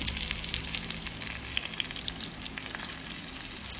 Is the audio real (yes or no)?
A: yes